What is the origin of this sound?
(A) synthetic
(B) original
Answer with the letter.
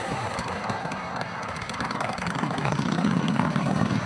A